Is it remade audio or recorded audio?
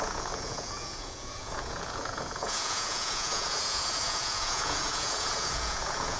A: remade